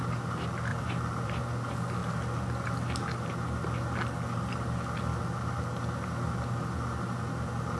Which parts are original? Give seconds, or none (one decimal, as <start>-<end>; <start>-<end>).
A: 0.0-0.7; 1.4-7.8